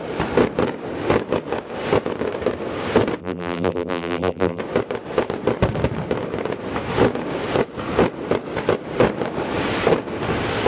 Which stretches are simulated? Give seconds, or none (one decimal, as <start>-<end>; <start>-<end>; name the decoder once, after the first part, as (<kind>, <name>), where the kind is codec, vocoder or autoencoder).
3.2-4.6 (vocoder, BigVGAN v2)